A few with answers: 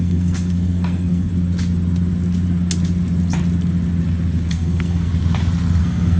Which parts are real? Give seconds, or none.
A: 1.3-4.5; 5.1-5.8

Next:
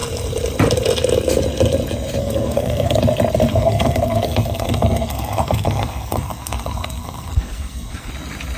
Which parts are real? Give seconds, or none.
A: 0.0-2.2; 3.0-3.5; 8.1-8.6